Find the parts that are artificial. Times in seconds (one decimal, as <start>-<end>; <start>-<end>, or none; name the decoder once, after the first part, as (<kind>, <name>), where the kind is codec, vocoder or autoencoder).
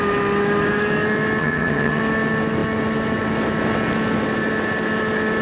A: 1.4-2.0 (vocoder, HiFi-GAN)